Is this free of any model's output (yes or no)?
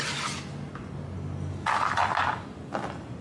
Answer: yes